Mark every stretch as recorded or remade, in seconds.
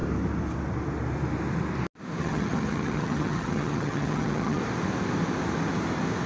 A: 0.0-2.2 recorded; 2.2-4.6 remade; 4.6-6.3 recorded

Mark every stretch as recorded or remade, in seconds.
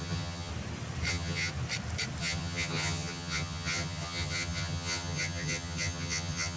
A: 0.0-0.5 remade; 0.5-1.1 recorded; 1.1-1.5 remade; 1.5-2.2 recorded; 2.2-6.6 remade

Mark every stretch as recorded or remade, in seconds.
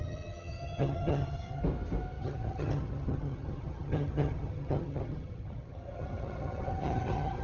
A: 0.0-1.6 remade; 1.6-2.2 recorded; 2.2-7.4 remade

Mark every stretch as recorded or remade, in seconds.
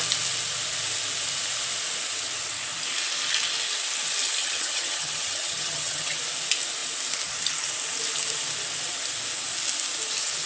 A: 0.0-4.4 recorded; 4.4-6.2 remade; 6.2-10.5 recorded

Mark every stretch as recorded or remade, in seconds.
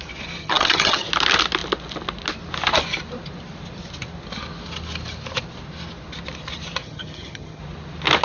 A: 0.0-0.4 recorded; 0.4-1.1 remade; 1.1-6.8 recorded; 6.8-7.6 remade; 7.6-8.2 recorded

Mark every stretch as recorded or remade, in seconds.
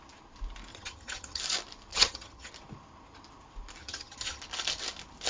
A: 0.0-0.7 recorded; 0.7-1.4 remade; 1.4-1.9 recorded; 1.9-2.5 remade; 2.5-3.8 recorded; 3.8-4.4 remade; 4.4-5.3 recorded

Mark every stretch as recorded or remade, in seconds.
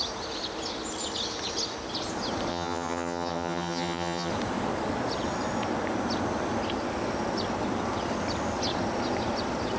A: 0.0-2.5 recorded; 2.5-4.3 remade; 4.3-9.8 recorded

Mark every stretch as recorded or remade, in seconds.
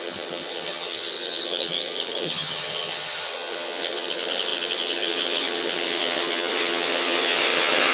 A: 0.0-7.9 remade